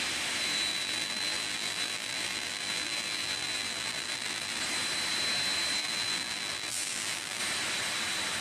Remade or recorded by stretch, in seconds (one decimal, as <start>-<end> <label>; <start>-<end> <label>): 0.0-0.7 recorded; 0.7-4.6 remade; 4.6-5.8 recorded; 5.8-7.4 remade; 7.4-8.4 recorded